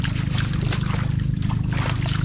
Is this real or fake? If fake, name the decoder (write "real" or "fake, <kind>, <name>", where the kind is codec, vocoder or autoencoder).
fake, vocoder, BigVGAN v2